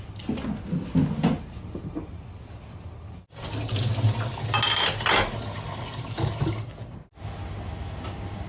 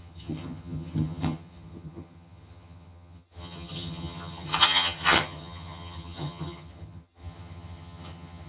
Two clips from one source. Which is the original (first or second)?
first